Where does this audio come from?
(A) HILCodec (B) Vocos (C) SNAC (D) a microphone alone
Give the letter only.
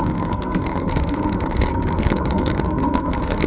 C